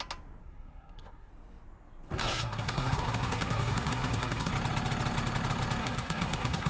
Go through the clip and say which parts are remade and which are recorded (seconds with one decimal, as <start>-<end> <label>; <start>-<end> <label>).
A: 0.0-0.4 recorded; 0.4-1.3 remade; 1.3-2.2 recorded; 2.2-4.5 remade; 4.5-5.8 recorded; 5.8-6.7 remade